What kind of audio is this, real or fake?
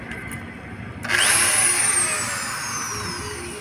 real